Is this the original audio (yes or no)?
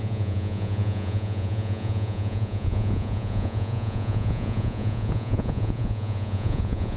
no